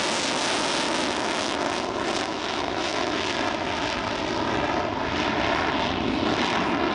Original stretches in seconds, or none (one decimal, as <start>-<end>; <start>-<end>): 0.0-2.3; 3.3-6.9